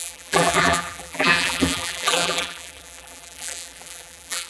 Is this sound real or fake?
fake